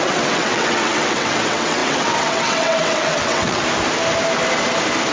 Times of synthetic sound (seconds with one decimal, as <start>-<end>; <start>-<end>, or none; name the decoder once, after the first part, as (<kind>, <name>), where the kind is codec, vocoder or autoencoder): 0.0-3.6 (vocoder, WaveNeXt)